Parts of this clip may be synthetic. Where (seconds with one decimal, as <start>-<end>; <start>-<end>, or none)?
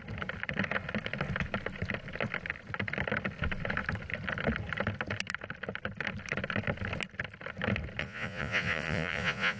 8.0-9.6